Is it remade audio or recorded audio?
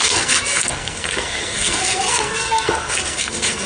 remade